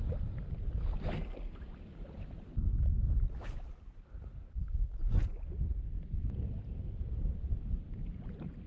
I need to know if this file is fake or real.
real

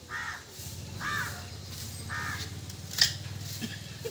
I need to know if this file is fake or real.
real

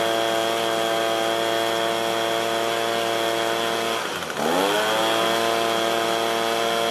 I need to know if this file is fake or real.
real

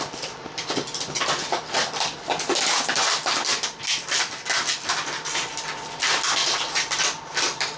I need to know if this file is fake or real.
real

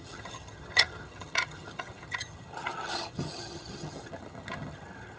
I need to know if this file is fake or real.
fake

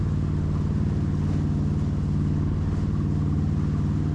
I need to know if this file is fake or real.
real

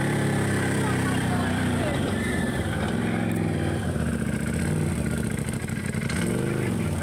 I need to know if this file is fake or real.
fake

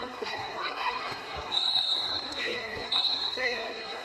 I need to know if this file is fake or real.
fake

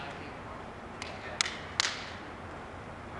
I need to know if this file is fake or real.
real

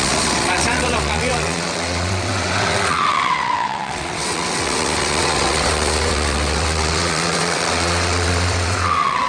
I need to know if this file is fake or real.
fake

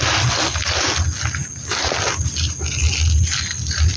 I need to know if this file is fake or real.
real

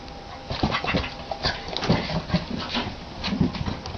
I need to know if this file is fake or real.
real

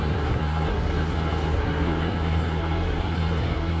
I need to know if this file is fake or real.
fake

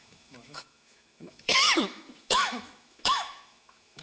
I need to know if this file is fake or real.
fake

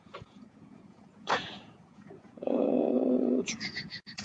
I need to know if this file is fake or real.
fake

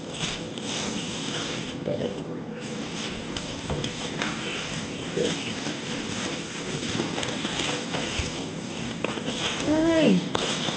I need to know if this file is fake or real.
fake